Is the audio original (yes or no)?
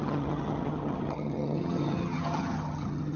no